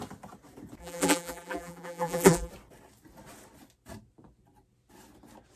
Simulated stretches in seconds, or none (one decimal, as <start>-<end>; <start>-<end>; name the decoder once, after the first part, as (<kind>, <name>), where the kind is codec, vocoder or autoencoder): 0.8-2.5 (vocoder, BigVGAN v2)